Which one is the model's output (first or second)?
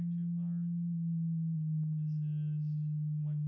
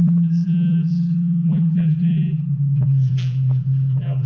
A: second